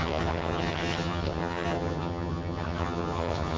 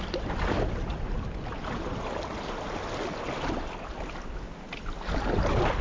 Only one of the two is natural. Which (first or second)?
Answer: second